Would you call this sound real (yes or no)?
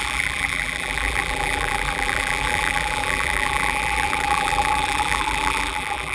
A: no